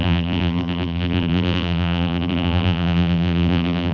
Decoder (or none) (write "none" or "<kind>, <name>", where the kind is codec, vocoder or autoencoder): vocoder, BigVGAN v2